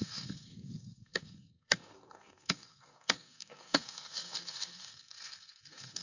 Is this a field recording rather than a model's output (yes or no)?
no